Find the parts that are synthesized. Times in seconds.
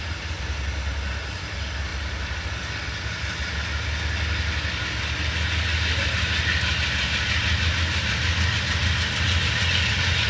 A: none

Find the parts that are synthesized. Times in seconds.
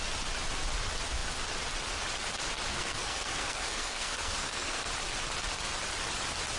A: 2.7-4.9 (codec, SNAC)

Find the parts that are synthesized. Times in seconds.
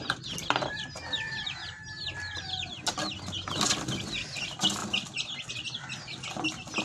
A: none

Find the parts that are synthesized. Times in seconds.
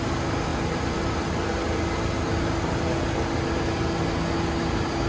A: none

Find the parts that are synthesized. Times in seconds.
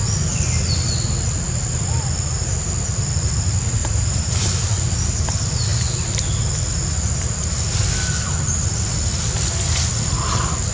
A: 3.8-4.5 (vocoder, BigVGAN v2)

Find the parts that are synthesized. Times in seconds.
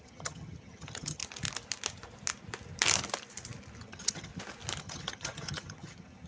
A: 0.0-1.2 (vocoder, HiFi-GAN); 3.8-4.3; 4.8-6.3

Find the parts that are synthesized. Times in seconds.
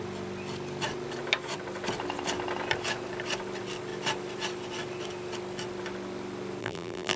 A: 6.6-7.2 (vocoder, BigVGAN v2)